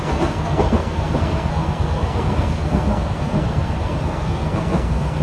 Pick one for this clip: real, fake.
fake